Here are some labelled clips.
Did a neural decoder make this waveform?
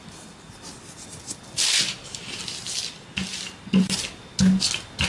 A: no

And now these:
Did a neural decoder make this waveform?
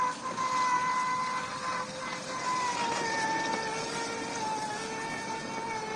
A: no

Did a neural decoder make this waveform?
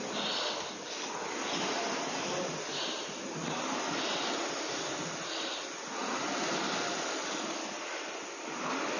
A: no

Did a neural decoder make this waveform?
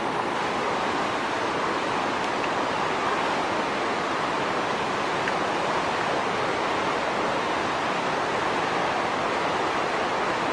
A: no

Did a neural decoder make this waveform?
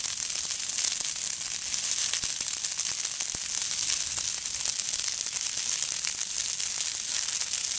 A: no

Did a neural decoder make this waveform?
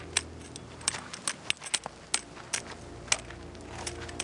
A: no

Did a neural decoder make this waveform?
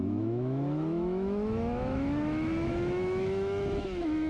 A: yes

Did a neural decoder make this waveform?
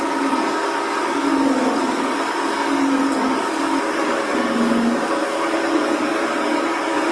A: yes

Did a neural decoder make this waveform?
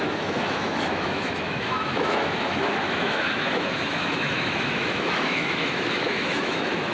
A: yes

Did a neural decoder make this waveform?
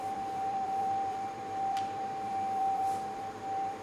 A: yes